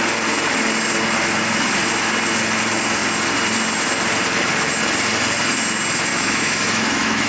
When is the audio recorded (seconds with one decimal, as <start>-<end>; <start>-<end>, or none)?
0.0-6.1